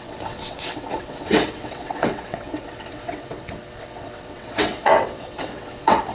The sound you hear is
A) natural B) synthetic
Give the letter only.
B